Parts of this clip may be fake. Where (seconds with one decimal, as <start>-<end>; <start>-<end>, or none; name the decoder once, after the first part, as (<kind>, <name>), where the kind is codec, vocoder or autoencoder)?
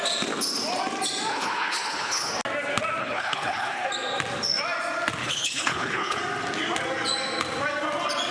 1.3-2.3 (codec, HILCodec); 3.0-3.9; 5.2-6.2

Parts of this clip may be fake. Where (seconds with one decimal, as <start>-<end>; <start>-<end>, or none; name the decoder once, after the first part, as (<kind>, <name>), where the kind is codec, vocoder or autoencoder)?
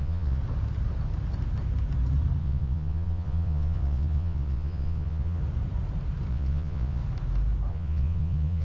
0.0-0.4 (vocoder, Vocos); 2.4-5.4; 6.3-7.0; 7.7-8.6